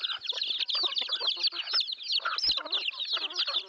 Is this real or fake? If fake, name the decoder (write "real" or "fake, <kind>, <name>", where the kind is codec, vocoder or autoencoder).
real